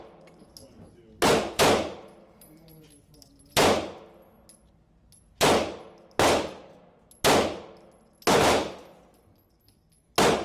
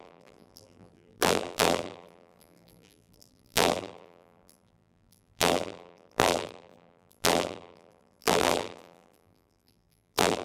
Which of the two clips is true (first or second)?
first